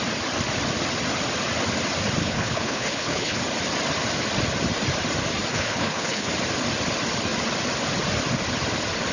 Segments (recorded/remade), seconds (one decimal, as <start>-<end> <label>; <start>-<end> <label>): 0.0-2.2 recorded; 2.2-3.4 remade; 3.4-5.5 recorded; 5.5-6.3 remade; 6.3-9.1 recorded

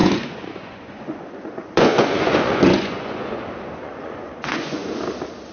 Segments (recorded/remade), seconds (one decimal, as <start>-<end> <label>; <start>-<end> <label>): 0.0-3.3 remade; 3.3-3.8 recorded; 3.8-5.0 remade; 5.0-5.5 recorded

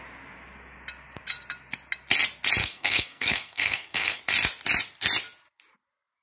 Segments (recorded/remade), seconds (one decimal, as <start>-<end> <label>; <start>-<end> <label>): 0.0-2.6 recorded; 2.6-4.2 remade; 4.2-6.2 recorded

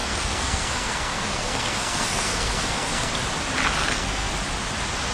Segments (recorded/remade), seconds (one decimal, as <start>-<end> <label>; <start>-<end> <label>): 0.0-3.1 remade; 3.1-3.8 recorded; 3.8-4.3 remade; 4.3-5.1 recorded

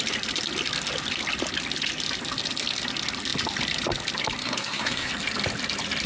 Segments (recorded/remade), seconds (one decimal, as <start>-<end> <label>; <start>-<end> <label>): 0.0-4.4 recorded; 4.4-5.1 remade; 5.1-6.1 recorded